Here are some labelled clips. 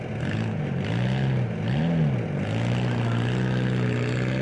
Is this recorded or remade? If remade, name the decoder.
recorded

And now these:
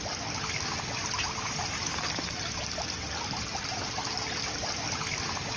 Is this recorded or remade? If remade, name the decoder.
recorded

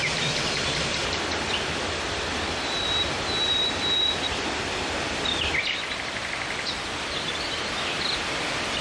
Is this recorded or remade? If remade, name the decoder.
remade, vocoder, BigVGAN v2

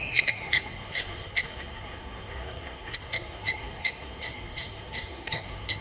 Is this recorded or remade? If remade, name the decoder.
remade, codec, SNAC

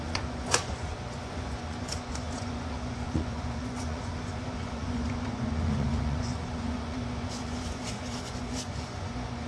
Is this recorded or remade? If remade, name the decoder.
remade, vocoder, Vocos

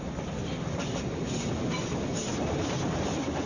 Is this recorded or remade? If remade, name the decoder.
recorded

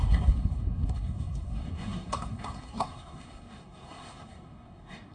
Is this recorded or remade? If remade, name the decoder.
remade, codec, SNAC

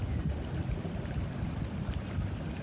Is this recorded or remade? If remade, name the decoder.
recorded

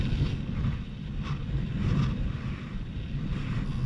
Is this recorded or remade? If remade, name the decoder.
recorded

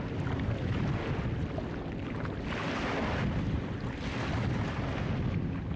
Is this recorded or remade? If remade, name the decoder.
recorded